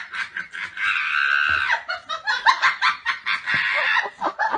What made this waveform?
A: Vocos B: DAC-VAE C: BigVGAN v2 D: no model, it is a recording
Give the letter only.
D